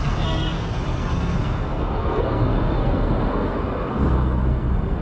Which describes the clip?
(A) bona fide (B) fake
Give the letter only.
B